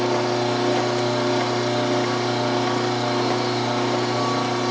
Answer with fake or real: real